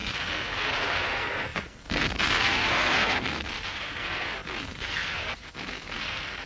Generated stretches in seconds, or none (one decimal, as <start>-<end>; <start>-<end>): 0.0-6.5